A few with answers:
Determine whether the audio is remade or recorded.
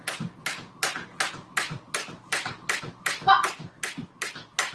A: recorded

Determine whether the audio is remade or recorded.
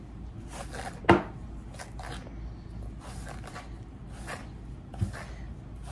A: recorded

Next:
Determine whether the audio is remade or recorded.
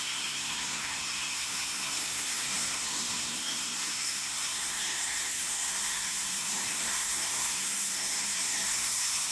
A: remade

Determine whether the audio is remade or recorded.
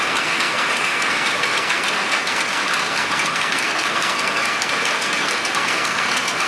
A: remade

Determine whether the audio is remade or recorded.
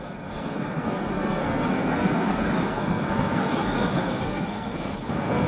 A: remade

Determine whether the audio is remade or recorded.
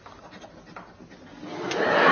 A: recorded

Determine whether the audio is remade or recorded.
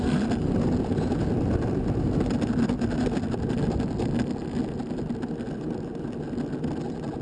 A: recorded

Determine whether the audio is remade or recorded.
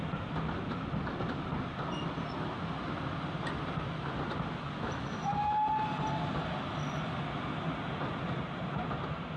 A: recorded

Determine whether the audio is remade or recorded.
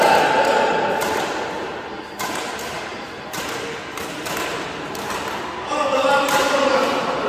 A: recorded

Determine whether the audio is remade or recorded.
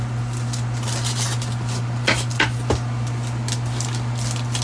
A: recorded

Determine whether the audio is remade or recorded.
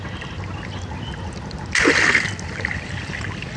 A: recorded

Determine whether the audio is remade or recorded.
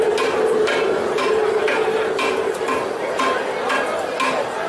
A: recorded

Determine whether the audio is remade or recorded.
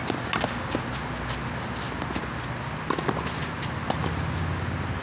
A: recorded